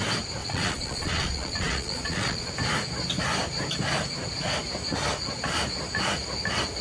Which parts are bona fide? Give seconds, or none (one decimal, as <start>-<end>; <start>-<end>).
0.0-0.4; 2.5-6.8